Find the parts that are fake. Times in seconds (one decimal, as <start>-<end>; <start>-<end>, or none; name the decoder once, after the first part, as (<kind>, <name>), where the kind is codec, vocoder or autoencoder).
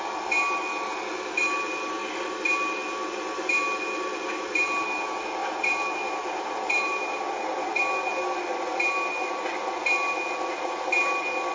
5.4-7.8 (vocoder, BigVGAN v2)